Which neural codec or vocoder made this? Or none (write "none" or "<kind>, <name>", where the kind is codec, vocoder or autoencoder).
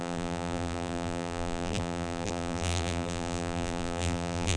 vocoder, BigVGAN v2